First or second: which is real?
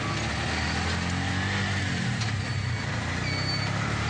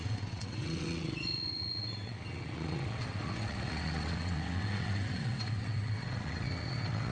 first